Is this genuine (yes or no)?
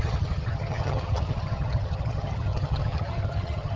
no